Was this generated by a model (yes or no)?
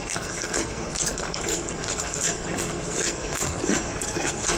yes